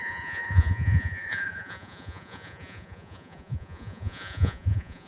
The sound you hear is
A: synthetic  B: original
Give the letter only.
A